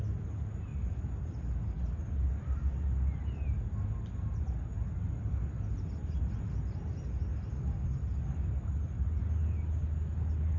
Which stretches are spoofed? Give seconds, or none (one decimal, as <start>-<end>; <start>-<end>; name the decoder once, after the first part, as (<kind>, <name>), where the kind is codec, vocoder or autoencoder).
none